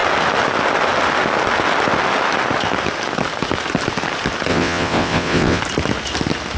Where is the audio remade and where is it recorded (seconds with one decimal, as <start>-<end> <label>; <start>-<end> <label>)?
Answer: 0.0-4.5 recorded; 4.5-5.6 remade; 5.6-6.6 recorded